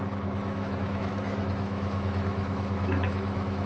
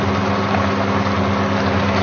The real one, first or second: second